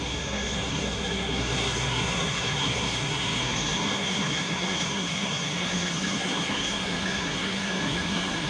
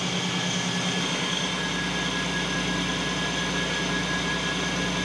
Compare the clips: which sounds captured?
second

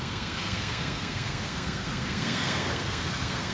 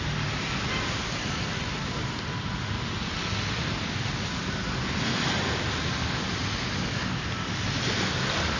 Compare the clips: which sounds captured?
second